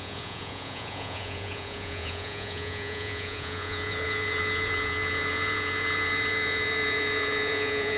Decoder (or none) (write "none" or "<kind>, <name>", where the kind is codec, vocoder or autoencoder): vocoder, Vocos